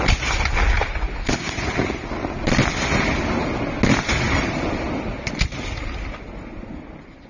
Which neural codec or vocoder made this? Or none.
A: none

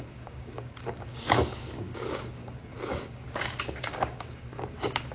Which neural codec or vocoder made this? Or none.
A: codec, DAC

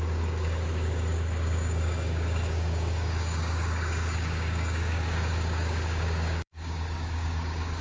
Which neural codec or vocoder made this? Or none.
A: codec, DAC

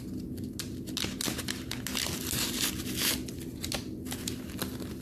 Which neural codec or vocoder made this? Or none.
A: none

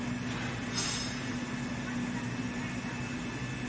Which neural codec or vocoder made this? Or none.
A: none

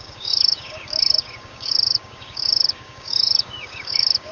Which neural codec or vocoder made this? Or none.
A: codec, DAC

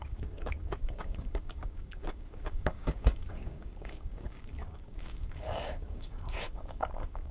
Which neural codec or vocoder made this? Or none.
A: codec, DAC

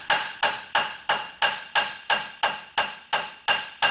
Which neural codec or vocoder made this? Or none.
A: none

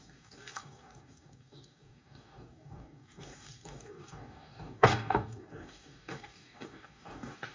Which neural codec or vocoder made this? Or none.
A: codec, DAC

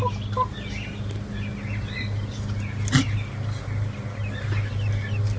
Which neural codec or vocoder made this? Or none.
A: none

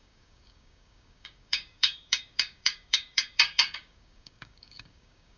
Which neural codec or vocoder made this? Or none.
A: codec, DAC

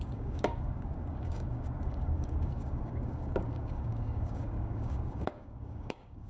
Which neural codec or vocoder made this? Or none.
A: codec, DAC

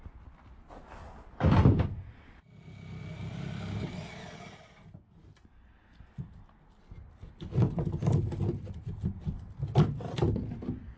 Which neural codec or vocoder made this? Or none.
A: none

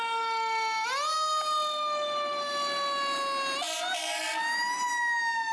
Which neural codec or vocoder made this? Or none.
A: none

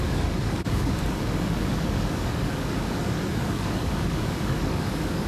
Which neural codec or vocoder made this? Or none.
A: codec, DAC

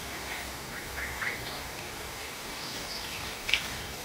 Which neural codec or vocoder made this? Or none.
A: codec, DAC